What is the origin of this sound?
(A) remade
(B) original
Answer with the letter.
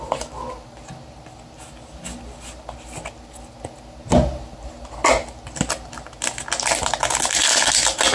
B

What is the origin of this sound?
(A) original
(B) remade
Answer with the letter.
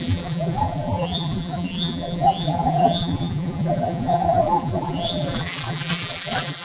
B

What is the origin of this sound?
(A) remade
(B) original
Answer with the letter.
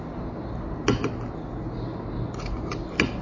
B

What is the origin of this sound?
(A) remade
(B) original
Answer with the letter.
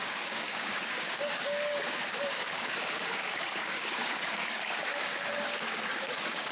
A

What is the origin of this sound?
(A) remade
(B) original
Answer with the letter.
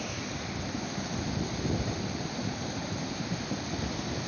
B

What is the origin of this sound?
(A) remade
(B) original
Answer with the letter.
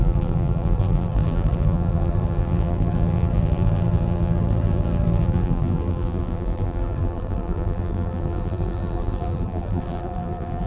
A